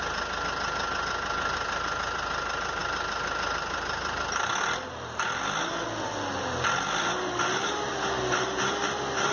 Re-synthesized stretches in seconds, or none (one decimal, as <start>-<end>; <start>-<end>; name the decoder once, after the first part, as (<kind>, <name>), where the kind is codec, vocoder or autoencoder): none